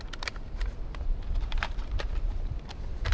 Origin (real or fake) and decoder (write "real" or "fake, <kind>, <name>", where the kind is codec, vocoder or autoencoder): fake, vocoder, BigVGAN v2